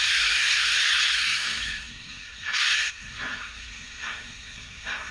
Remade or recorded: remade